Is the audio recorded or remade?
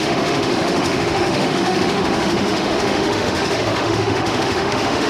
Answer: remade